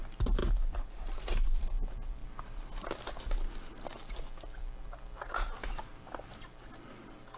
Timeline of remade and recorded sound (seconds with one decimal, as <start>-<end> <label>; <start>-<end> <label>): 0.0-0.4 recorded; 0.4-1.6 remade; 1.6-7.4 recorded